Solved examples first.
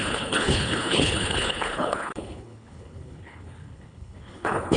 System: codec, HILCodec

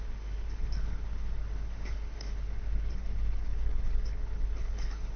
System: codec, HILCodec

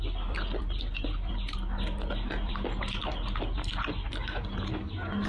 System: none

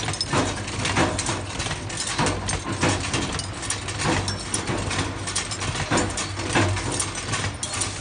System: none